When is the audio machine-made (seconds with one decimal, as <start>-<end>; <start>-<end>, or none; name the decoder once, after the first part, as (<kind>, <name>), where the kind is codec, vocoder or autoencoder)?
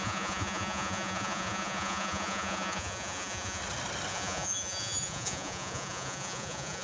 0.0-3.6 (vocoder, Vocos); 4.1-6.8